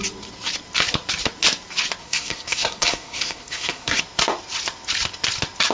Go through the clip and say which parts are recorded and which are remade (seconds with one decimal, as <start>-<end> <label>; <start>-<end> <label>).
0.0-2.0 recorded; 2.0-4.0 remade; 4.0-5.7 recorded